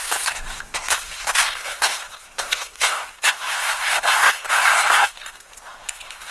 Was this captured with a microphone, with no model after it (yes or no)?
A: no